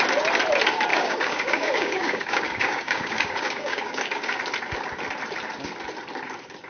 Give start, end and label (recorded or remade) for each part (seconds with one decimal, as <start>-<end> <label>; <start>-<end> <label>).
0.0-0.9 recorded; 0.9-4.4 remade; 4.4-6.7 recorded